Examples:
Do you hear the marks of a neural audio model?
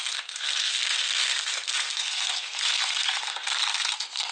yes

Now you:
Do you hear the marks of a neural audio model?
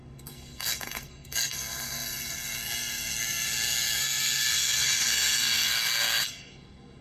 yes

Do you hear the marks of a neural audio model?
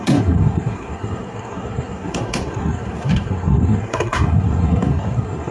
yes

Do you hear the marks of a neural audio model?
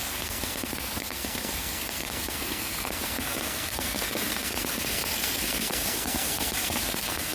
yes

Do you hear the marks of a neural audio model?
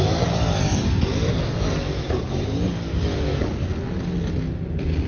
no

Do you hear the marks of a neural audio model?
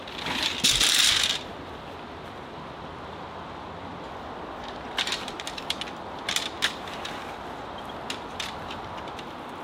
no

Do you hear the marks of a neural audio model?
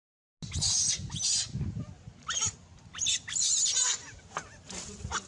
no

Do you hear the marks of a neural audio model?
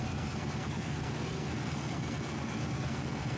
yes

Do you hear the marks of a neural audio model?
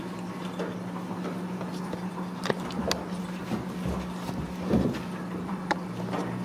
no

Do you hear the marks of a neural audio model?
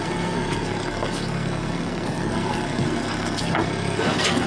yes